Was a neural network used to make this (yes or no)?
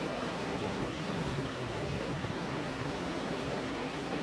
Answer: yes